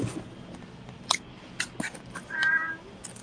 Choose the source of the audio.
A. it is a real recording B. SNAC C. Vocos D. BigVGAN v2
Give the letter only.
A